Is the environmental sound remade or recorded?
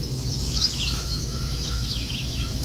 remade